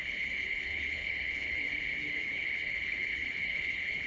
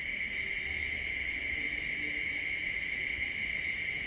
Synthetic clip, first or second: first